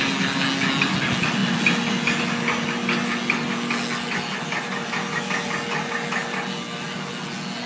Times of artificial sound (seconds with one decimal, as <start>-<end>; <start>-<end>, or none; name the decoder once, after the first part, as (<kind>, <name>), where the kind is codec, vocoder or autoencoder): none